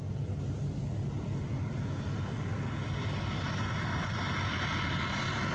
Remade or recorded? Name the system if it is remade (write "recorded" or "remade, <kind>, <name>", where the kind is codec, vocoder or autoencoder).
recorded